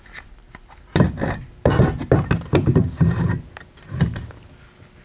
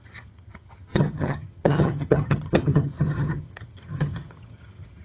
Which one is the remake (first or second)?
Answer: second